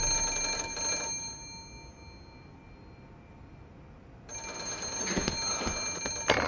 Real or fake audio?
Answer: real